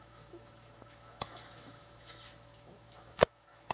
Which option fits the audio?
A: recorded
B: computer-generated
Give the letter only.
B